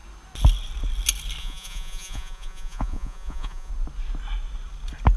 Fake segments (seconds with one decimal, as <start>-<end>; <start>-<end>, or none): 1.4-3.7